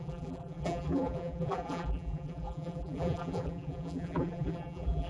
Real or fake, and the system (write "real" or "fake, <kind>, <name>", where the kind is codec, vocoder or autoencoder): fake, vocoder, BigVGAN v2